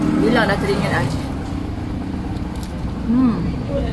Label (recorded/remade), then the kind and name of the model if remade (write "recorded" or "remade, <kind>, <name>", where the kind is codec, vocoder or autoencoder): recorded